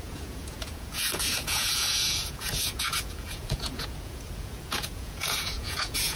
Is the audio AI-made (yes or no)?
yes